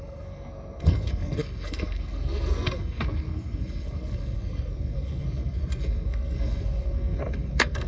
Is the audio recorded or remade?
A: remade